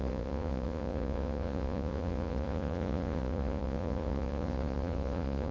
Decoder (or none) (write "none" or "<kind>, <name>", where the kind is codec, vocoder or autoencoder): vocoder, Vocos